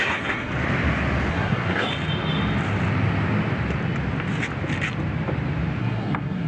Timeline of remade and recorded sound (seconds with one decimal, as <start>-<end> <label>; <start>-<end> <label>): 0.0-0.5 remade; 0.5-1.3 recorded; 1.3-1.9 remade; 1.9-5.8 recorded; 5.8-6.5 remade